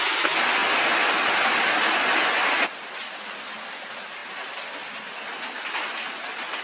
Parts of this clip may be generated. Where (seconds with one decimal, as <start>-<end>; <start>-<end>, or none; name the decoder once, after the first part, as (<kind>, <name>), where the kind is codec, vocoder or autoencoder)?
none